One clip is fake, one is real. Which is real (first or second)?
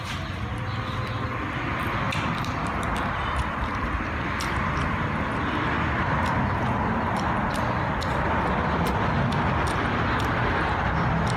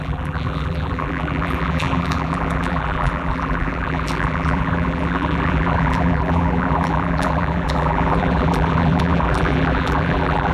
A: first